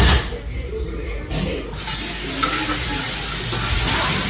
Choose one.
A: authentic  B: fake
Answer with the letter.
A